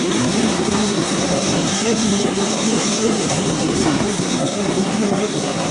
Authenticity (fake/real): fake